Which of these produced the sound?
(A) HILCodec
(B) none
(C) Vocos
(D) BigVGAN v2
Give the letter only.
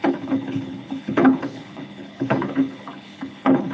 A